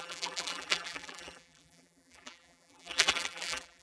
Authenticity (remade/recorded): remade